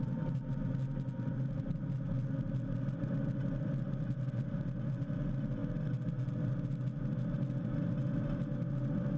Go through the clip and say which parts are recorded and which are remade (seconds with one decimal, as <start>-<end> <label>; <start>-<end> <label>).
0.0-9.2 recorded